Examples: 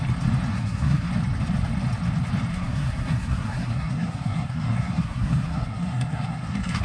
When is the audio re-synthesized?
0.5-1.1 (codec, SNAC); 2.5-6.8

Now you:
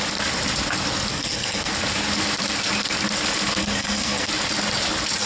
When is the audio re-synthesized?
1.1-1.7 (codec, SNAC); 3.6-4.3

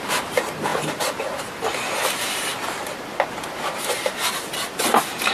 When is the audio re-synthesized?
none

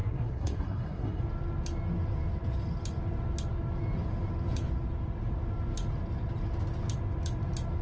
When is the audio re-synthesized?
0.0-1.2 (codec, SNAC)

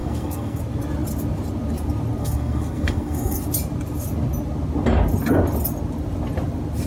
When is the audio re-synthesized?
0.0-0.6 (codec, SNAC); 2.2-3.4

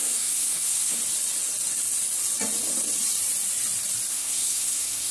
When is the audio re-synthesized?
0.0-1.0 (codec, SNAC); 4.1-5.1

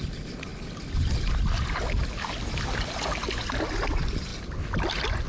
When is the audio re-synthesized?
none

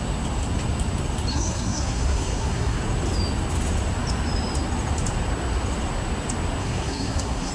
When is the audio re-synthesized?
1.3-2.8 (codec, SNAC); 6.6-7.5